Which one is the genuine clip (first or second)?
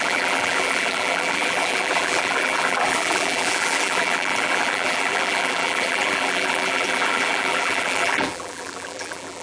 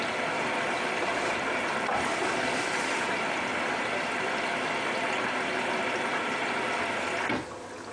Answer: second